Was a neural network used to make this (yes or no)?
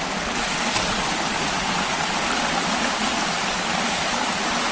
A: no